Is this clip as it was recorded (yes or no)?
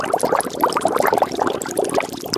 no